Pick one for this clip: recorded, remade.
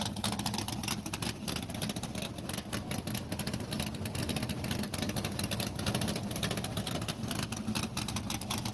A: recorded